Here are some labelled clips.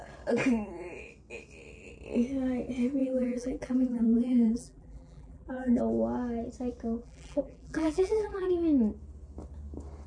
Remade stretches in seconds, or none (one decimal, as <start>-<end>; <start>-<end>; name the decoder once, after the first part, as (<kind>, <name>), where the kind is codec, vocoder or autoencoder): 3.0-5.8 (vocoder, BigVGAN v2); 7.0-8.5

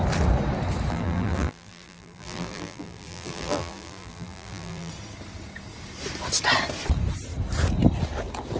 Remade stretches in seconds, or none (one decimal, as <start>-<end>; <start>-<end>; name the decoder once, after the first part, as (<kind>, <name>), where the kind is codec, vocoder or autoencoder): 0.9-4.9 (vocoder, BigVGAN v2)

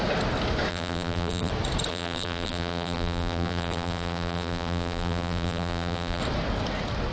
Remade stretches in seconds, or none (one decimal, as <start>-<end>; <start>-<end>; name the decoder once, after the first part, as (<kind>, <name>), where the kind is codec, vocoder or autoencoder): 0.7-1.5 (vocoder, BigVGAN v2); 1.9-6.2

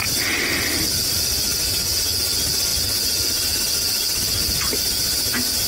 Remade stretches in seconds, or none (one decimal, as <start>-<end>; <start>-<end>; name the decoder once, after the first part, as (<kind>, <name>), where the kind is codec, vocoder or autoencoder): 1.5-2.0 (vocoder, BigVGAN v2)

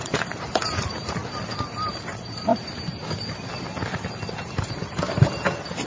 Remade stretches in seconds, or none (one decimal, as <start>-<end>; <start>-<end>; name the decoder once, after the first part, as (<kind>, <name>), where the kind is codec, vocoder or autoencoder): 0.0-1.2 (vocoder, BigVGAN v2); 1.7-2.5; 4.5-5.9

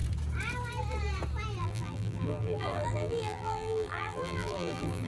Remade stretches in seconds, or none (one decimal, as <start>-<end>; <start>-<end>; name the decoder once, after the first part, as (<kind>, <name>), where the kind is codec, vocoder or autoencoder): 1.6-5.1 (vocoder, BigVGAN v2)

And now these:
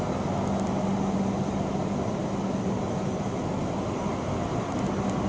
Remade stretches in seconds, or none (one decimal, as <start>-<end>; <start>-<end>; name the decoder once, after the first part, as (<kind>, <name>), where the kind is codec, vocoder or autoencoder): none